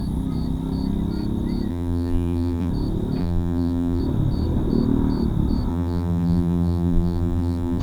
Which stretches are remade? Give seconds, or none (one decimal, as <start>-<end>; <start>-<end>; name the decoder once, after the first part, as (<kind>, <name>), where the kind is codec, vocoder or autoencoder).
1.7-2.7 (vocoder, BigVGAN v2); 3.2-4.0; 5.7-7.8